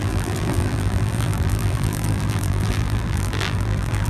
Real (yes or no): no